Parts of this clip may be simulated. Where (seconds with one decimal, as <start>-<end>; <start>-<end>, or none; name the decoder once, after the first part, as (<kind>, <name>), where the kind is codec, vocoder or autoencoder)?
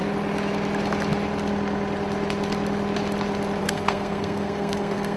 3.6-5.2 (codec, SNAC)